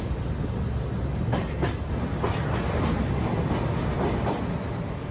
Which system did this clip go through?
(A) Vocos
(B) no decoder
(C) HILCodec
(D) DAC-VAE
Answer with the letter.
B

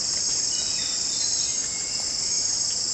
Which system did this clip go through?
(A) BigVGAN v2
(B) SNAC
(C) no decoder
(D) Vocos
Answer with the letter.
C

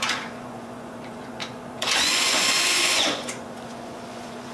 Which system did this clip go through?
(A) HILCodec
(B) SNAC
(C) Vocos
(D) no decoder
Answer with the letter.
C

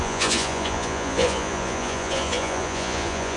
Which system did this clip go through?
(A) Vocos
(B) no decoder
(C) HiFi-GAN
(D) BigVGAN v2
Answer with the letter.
A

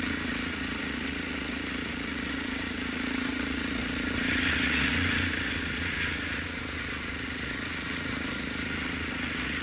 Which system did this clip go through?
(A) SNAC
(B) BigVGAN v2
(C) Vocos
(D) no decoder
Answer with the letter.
C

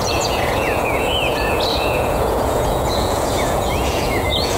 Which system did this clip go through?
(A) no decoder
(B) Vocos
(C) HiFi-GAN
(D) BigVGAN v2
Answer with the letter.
B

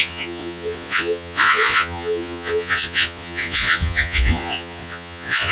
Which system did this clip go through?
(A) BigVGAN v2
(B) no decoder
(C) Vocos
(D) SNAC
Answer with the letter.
C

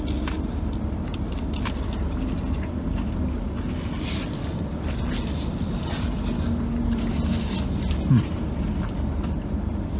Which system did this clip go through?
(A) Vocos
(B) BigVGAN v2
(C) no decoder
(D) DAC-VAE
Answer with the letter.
C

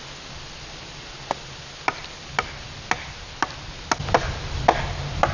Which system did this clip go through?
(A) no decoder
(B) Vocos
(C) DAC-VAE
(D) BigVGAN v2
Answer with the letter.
A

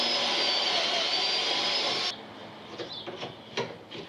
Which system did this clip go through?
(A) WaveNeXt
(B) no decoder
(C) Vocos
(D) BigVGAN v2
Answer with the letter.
B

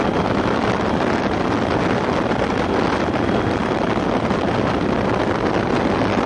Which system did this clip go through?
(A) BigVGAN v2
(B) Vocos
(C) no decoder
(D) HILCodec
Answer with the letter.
C